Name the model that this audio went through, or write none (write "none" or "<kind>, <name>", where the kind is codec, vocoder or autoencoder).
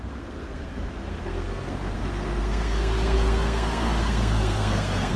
codec, SNAC